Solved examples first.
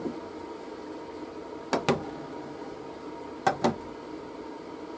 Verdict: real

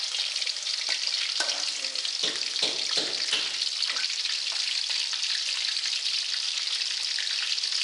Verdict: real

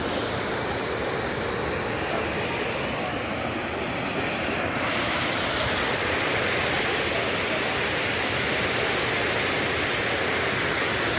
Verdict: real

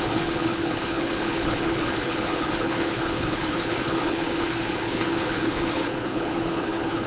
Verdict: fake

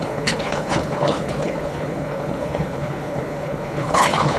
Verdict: fake